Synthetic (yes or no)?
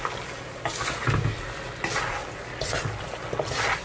no